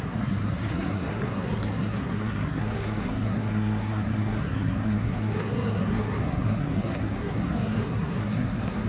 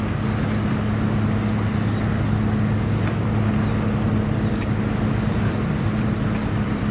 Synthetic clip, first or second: first